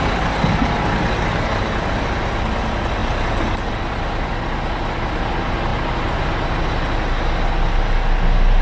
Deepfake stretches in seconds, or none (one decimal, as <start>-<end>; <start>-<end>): none